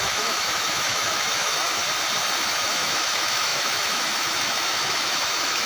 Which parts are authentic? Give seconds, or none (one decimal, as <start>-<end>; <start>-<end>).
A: 1.8-2.4